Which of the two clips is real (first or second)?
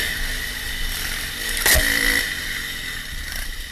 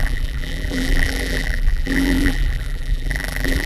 first